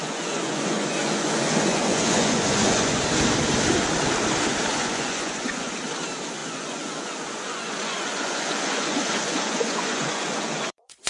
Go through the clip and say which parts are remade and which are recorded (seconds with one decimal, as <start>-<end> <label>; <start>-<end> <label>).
0.0-3.0 remade; 3.0-4.7 recorded; 4.7-5.7 remade; 5.7-6.4 recorded; 6.4-11.1 remade